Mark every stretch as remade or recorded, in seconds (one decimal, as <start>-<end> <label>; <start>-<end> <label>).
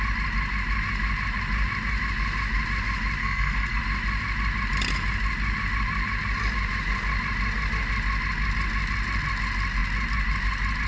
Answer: 0.0-3.2 recorded; 3.2-3.8 remade; 3.8-10.9 recorded